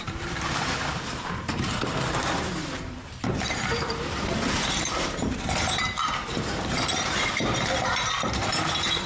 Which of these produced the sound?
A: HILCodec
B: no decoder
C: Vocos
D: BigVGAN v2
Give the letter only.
D